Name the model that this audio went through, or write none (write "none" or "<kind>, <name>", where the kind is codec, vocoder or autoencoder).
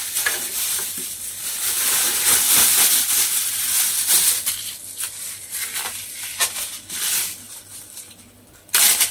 vocoder, BigVGAN v2